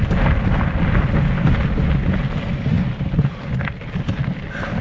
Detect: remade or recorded recorded